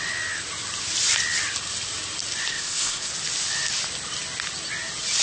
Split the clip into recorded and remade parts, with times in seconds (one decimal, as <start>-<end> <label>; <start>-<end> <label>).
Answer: 0.0-2.5 recorded; 2.5-3.1 remade; 3.1-5.2 recorded